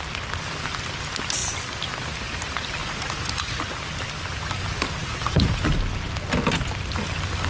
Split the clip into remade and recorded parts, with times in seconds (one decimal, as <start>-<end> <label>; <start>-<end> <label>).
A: 0.0-2.8 recorded; 2.8-3.6 remade; 3.6-5.0 recorded; 5.0-5.6 remade; 5.6-7.5 recorded